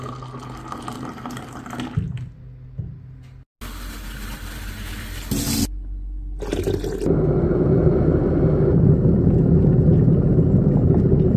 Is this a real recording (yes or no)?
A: yes